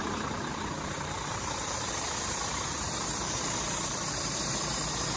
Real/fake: fake